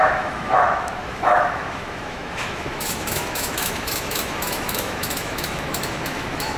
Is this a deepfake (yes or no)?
yes